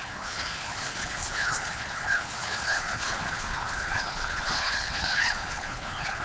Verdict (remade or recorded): remade